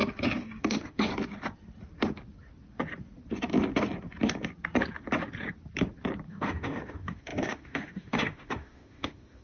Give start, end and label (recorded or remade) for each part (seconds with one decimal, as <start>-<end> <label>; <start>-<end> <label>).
0.0-0.6 recorded; 0.6-1.1 remade; 1.1-6.3 recorded; 6.3-9.4 remade